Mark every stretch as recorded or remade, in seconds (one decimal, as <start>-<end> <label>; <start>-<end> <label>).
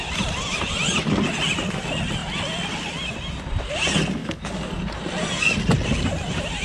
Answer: 0.0-4.2 recorded; 4.2-4.7 remade; 4.7-6.6 recorded